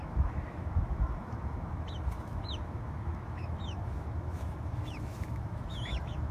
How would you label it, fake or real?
fake